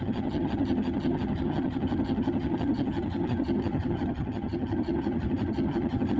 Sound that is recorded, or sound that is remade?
remade